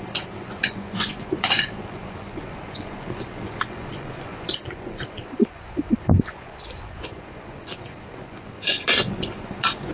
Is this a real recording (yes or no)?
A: no